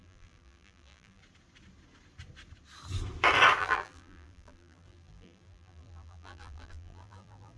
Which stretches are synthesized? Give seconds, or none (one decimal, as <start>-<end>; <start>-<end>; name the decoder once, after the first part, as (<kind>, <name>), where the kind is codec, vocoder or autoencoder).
0.0-1.2 (vocoder, BigVGAN v2); 3.6-7.6